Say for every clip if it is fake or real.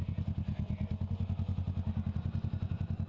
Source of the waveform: real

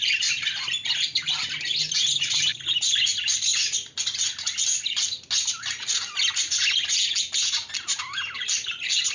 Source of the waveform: real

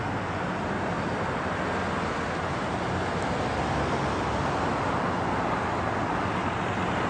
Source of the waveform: real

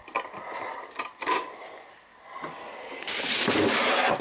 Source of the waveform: real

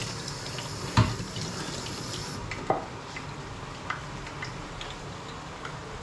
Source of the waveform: real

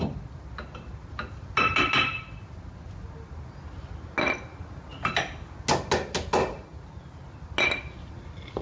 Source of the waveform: real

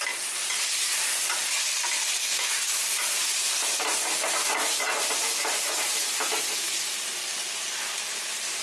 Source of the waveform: real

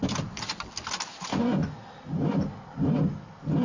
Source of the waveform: real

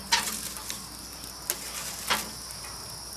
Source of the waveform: real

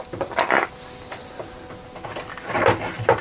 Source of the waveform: real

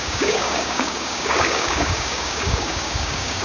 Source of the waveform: fake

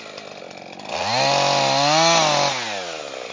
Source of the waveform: real